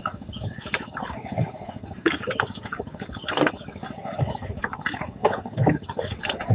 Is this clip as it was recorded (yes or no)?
no